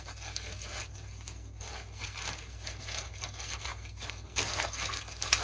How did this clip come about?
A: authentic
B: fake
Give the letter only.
B